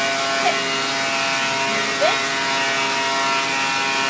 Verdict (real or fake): real